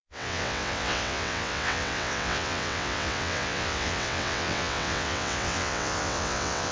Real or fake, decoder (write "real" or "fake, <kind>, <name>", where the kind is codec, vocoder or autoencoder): fake, vocoder, WaveNeXt